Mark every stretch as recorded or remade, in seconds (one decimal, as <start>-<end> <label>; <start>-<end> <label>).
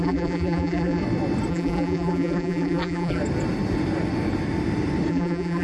0.0-1.0 remade; 1.0-1.5 recorded; 1.5-3.2 remade; 3.2-5.1 recorded; 5.1-5.6 remade